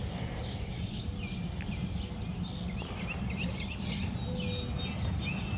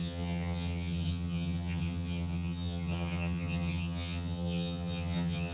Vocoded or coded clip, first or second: second